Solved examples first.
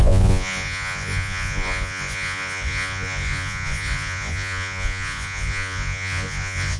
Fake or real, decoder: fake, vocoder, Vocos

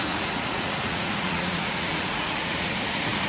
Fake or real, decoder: fake, vocoder, Vocos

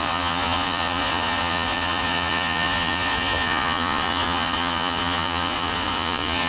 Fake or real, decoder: fake, vocoder, Vocos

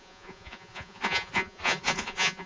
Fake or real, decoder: fake, vocoder, Vocos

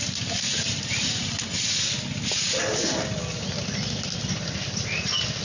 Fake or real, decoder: real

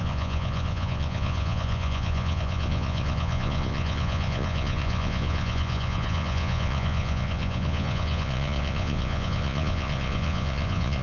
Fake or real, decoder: fake, vocoder, Vocos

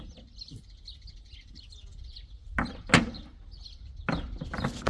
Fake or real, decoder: real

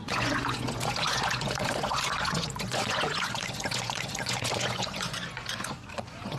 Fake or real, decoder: fake, vocoder, Vocos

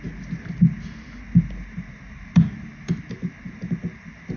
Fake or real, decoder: real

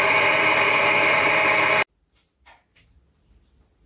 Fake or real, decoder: real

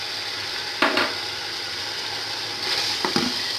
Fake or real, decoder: real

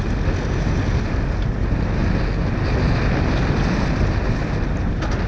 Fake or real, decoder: real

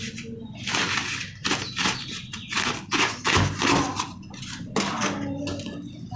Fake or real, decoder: real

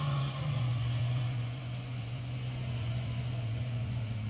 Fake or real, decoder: fake, vocoder, Vocos